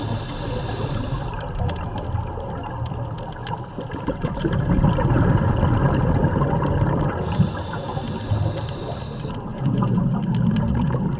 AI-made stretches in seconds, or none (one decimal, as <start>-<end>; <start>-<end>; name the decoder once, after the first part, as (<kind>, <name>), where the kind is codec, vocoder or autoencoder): 9.5-10.0 (vocoder, Vocos)